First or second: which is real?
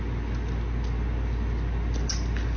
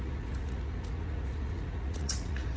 first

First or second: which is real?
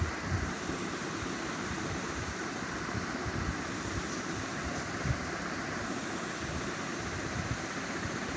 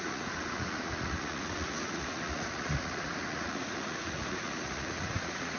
first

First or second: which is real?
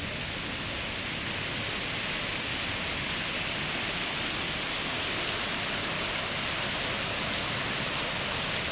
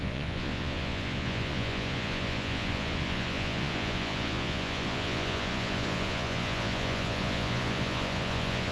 first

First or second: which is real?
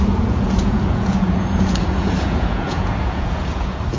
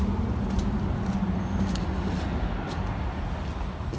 second